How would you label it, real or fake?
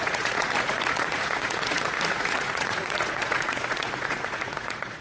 fake